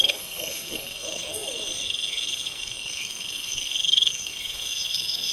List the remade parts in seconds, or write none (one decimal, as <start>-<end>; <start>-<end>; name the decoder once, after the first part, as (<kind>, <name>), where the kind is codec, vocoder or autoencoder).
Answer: 0.0-5.3 (codec, SNAC)